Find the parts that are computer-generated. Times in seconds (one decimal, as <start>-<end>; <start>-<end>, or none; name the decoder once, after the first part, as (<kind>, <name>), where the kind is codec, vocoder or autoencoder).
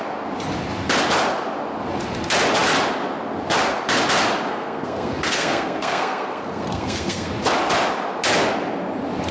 4.5-7.3 (codec, SNAC)